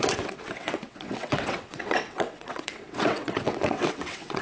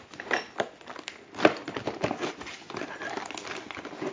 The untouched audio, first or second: second